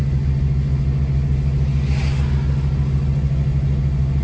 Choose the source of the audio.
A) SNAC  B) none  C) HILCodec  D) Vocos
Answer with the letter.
B